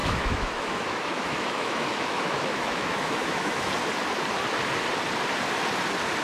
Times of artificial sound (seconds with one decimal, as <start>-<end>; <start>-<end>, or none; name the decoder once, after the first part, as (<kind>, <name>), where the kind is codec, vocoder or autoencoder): 0.0-3.7 (autoencoder, DAC-VAE)